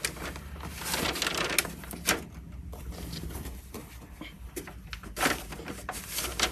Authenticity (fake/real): real